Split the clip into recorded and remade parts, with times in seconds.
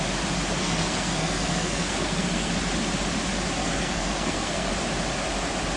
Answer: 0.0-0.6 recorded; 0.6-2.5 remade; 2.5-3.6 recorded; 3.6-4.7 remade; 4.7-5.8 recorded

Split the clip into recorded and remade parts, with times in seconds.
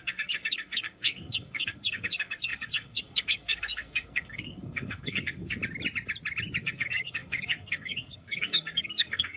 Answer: 0.0-5.6 remade; 5.6-6.6 recorded; 6.6-9.4 remade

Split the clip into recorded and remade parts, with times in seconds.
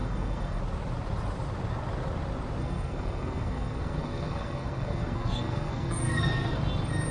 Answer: 0.0-0.6 remade; 0.6-2.6 recorded; 2.6-6.6 remade; 6.6-7.1 recorded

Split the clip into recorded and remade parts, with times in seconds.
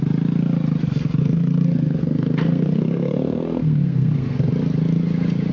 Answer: 0.0-1.2 recorded; 1.2-4.5 remade; 4.5-5.5 recorded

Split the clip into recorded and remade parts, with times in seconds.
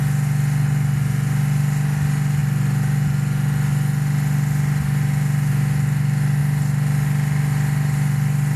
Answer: 0.0-8.6 recorded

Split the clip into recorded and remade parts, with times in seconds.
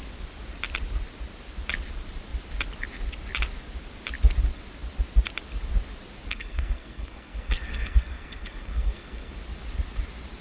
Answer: 0.0-6.3 recorded; 6.3-9.3 remade; 9.3-10.4 recorded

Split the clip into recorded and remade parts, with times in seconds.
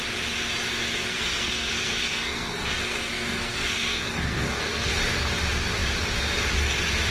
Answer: 0.0-0.7 recorded; 0.7-5.0 remade; 5.0-7.1 recorded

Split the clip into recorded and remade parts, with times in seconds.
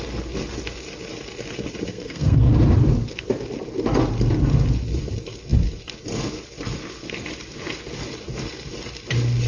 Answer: 0.0-1.9 recorded; 1.9-2.5 remade; 2.5-9.5 recorded